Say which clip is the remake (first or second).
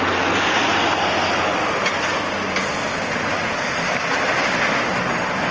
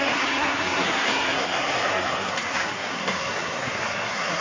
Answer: second